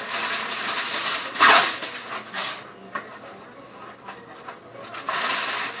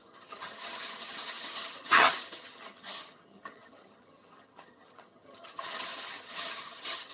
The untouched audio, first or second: first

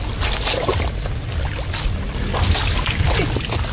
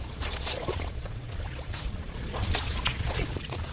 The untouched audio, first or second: first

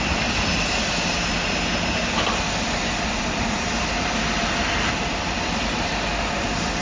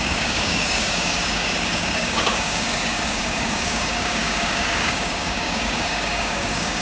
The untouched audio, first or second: first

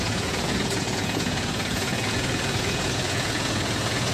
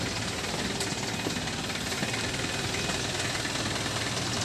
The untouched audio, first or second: second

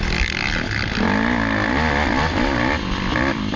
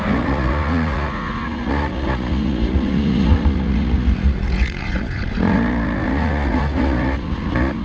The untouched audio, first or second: first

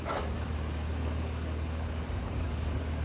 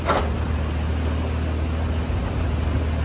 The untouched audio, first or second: second